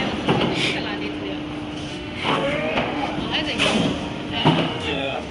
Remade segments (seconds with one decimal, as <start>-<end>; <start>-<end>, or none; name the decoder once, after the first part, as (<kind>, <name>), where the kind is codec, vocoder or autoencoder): 1.9-3.1 (autoencoder, DAC-VAE); 4.4-5.3